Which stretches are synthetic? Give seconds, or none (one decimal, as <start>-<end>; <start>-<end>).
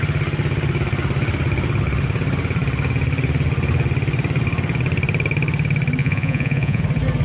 6.0-6.8